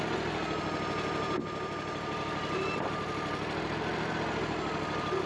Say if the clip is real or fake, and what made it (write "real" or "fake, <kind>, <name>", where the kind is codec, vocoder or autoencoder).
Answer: real